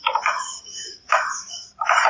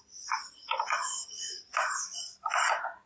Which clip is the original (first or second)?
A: second